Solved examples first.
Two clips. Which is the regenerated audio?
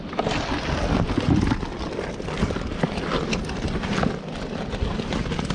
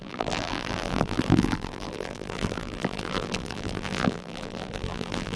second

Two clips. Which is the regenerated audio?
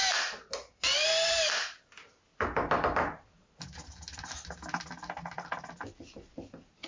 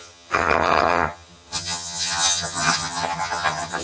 second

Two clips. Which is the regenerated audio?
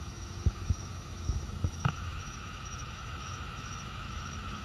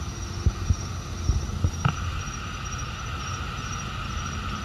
first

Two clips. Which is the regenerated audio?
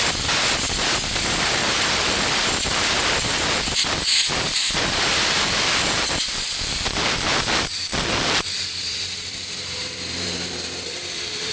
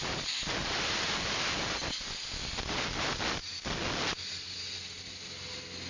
first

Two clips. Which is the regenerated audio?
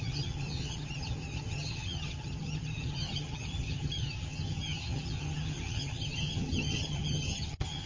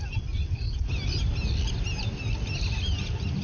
first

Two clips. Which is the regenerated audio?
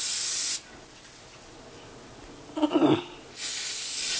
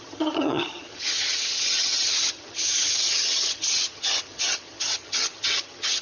second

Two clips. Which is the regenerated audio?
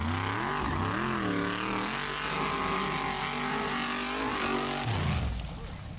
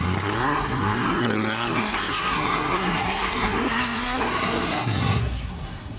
second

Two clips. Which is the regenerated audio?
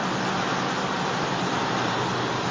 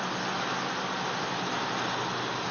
first